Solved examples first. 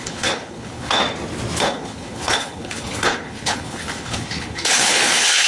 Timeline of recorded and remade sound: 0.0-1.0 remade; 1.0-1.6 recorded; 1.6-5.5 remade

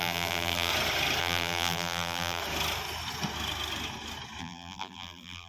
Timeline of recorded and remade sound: 0.0-0.7 remade; 0.7-1.2 recorded; 1.2-2.4 remade; 2.4-4.4 recorded; 4.4-5.5 remade

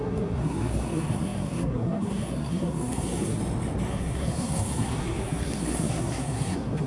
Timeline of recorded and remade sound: 0.0-3.4 remade; 3.4-3.9 recorded; 3.9-6.9 remade

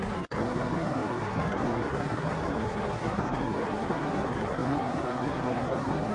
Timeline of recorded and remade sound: 0.0-6.1 remade

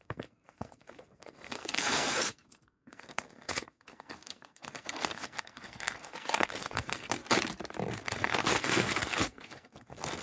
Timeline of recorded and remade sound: 0.0-7.2 remade; 7.2-8.0 recorded; 8.0-10.2 remade

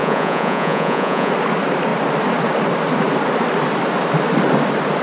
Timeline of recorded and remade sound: 0.0-1.3 remade; 1.3-5.0 recorded

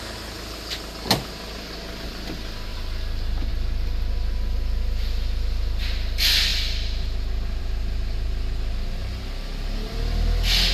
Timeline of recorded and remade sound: 0.0-2.7 recorded; 2.7-3.5 remade; 3.5-10.7 recorded